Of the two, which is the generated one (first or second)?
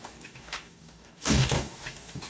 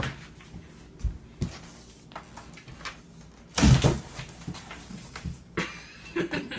first